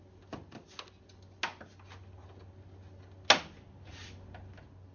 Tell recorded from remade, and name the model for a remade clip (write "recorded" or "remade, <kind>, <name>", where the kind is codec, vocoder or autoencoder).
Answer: recorded